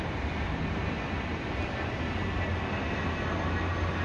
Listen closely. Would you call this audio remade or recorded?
recorded